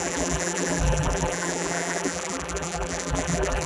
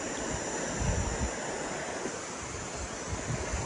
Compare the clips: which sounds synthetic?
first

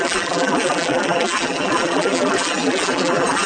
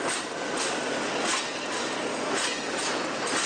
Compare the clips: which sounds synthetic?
first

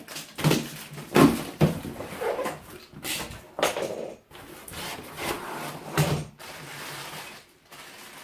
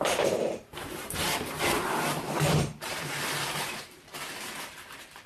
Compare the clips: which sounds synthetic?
second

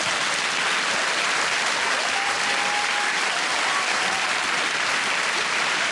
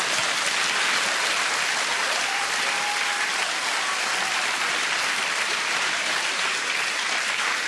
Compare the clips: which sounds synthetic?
second